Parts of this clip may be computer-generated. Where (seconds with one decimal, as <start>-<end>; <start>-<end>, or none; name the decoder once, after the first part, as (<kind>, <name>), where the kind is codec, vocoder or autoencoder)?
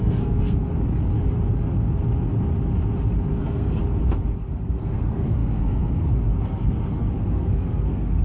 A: 0.0-0.7 (codec, SNAC); 3.4-3.8; 4.4-8.2